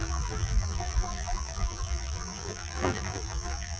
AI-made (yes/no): yes